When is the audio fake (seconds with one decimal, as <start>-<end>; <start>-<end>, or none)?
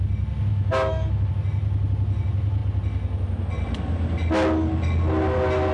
0.5-1.3